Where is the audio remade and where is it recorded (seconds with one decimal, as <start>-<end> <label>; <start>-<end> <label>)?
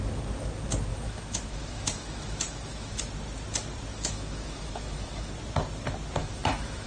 0.0-0.9 recorded; 0.9-3.0 remade; 3.0-3.9 recorded; 3.9-5.3 remade; 5.3-6.2 recorded; 6.2-6.9 remade